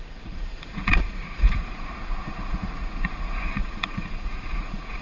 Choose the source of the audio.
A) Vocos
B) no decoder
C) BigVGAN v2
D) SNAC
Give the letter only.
A